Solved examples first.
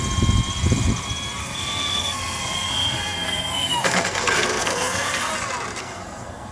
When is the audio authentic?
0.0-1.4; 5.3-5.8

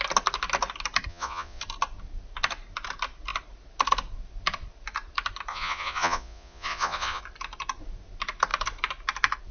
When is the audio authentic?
0.0-1.1; 1.6-5.5; 7.2-9.5

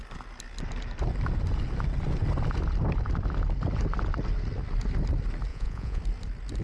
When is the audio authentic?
0.0-5.5; 6.0-6.6

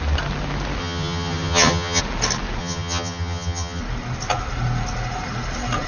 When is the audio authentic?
0.0-0.8; 2.0-2.6; 3.8-5.9